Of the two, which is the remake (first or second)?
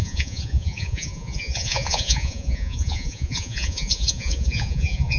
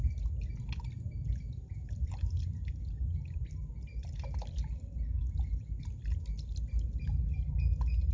first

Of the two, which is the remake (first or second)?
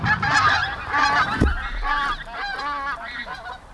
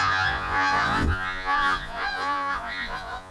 second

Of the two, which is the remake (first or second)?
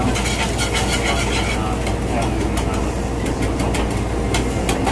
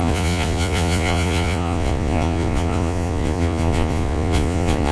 second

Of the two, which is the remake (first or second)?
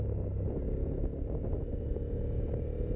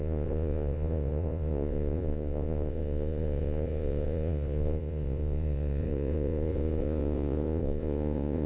second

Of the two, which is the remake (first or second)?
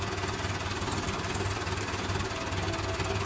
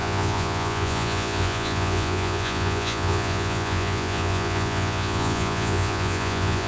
second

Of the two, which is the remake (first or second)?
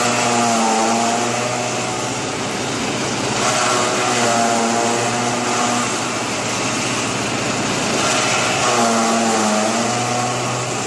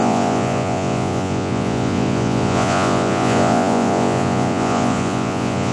second